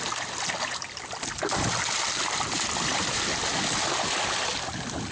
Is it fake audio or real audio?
real